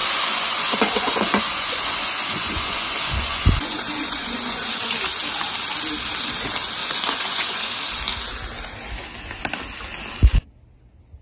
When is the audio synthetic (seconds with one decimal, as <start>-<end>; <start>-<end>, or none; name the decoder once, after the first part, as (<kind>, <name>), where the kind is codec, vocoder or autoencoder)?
0.0-4.9 (vocoder, Vocos); 6.8-7.7